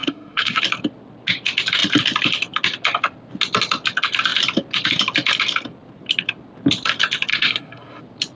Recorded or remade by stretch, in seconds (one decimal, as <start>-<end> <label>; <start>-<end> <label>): 0.0-0.6 remade; 0.6-7.3 recorded; 7.3-8.0 remade; 8.0-8.4 recorded